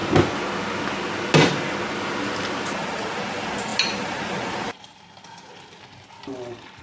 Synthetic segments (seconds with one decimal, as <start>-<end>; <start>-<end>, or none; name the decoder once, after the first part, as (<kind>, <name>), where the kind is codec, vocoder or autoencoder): none